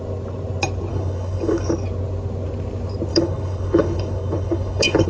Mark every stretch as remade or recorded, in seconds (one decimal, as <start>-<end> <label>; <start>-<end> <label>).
0.0-0.9 recorded; 0.9-1.7 remade; 1.7-3.1 recorded; 3.1-5.1 remade